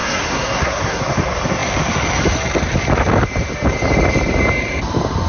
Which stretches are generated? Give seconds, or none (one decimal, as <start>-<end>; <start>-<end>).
0.0-1.0